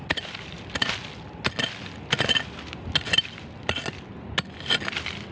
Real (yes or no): yes